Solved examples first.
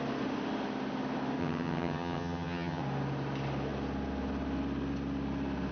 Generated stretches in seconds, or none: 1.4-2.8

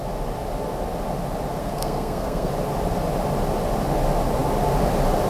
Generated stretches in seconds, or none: 1.6-2.5

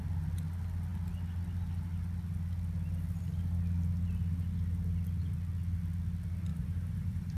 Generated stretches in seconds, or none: 6.5-7.4